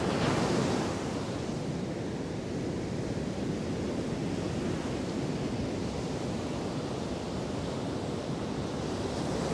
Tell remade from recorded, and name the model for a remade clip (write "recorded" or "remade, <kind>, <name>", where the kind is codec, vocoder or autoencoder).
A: recorded